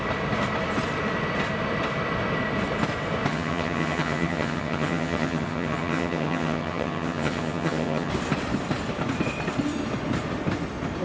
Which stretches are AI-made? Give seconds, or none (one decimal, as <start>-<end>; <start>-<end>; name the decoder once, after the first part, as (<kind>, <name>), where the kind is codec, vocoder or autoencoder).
3.3-8.1 (vocoder, HiFi-GAN)